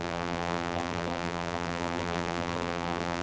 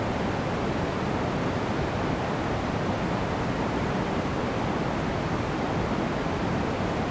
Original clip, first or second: second